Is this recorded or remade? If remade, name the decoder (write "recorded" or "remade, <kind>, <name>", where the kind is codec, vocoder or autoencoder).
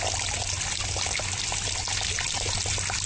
recorded